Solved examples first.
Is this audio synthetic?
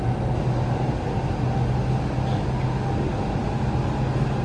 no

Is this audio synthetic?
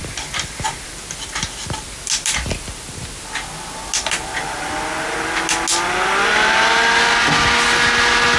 no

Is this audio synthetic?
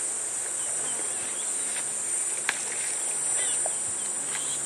no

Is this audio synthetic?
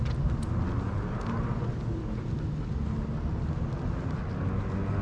no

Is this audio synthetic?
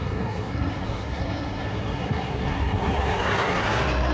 yes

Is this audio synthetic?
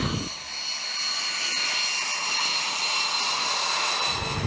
no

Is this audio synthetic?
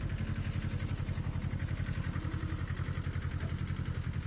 no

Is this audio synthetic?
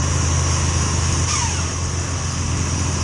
no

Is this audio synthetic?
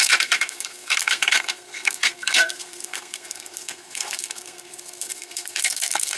yes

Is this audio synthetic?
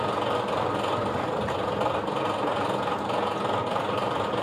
no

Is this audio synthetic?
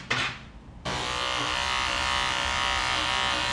no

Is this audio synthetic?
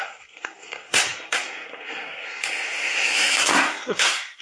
yes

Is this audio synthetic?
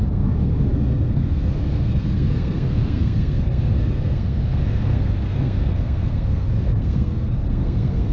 yes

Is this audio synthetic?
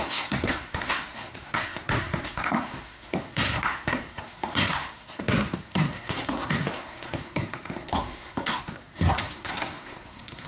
yes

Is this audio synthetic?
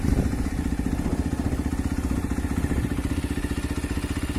no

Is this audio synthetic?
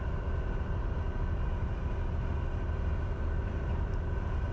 no